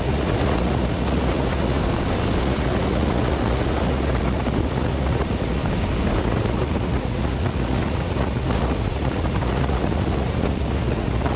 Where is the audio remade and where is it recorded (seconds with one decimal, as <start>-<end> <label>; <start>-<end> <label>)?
0.0-1.8 remade; 1.8-2.4 recorded; 2.4-5.6 remade; 5.6-6.2 recorded; 6.2-11.4 remade